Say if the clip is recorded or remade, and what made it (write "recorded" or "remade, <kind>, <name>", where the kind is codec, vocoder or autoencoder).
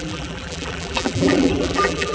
remade, vocoder, BigVGAN v2